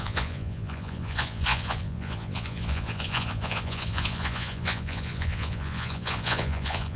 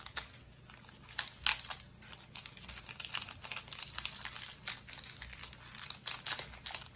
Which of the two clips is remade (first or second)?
first